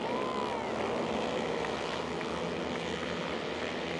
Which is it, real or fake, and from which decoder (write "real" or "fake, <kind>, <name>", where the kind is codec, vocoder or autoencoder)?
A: real